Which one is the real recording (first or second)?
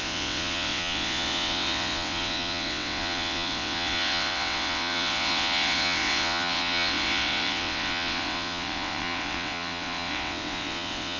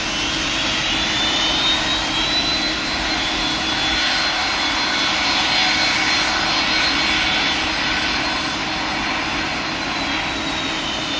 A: second